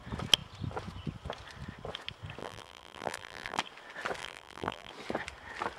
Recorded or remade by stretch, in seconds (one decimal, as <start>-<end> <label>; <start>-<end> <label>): 0.0-2.4 recorded; 2.4-3.6 remade; 3.6-4.2 recorded; 4.2-4.9 remade; 4.9-5.8 recorded